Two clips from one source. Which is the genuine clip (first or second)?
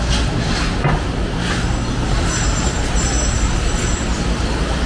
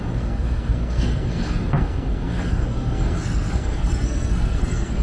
first